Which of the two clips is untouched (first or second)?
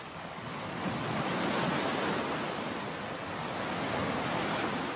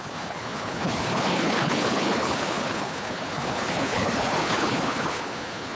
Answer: first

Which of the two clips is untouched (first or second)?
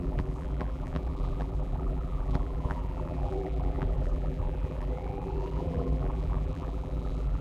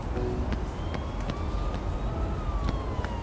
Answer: second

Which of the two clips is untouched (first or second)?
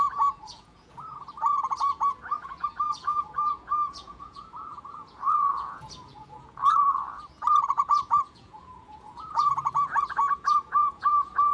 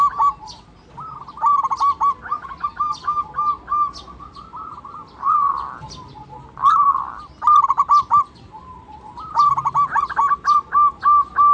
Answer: second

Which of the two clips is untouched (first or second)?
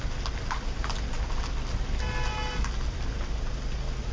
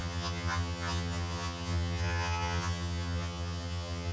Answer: first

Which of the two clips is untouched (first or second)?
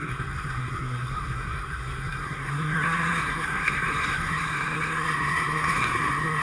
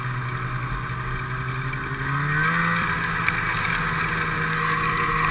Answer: second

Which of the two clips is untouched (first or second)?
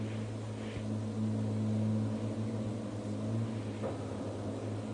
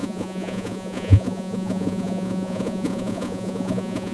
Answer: first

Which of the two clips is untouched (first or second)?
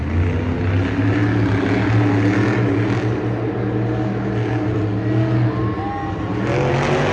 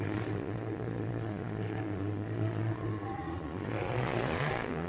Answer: first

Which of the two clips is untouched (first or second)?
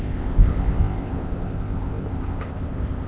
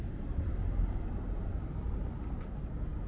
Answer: second